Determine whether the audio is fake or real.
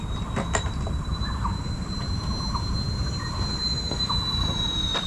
real